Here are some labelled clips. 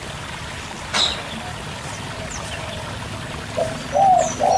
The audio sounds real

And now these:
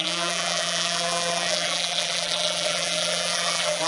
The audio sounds fake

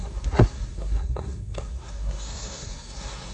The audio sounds fake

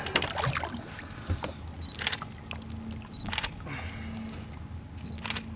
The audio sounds real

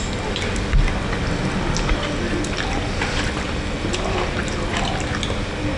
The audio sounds real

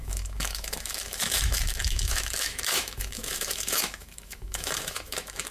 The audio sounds fake